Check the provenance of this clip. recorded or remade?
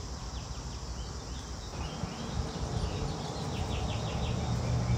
recorded